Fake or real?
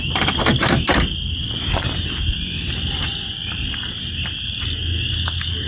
real